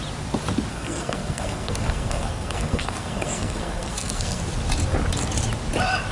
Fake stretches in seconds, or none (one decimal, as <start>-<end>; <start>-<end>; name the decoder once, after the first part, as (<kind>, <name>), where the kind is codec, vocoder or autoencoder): 0.7-4.4 (codec, SNAC)